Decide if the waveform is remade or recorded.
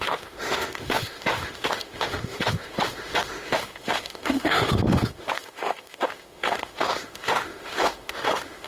remade